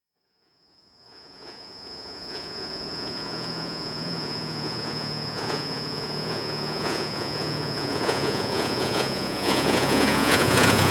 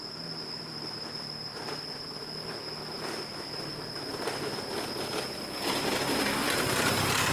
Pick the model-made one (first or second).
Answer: first